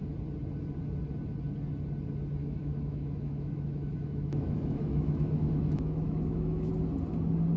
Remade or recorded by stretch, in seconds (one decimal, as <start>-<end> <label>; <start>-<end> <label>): 0.0-2.4 recorded; 2.4-6.7 remade; 6.7-7.6 recorded